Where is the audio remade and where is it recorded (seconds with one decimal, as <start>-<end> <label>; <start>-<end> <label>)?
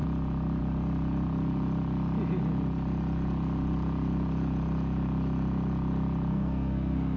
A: 0.0-6.3 recorded; 6.3-7.2 remade